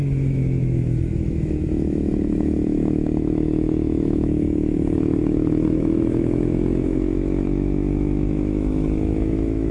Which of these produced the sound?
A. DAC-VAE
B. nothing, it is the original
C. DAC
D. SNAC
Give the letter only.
A